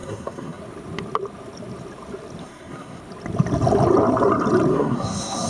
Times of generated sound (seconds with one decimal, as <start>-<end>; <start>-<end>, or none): 0.0-0.6; 2.4-3.0; 4.7-5.5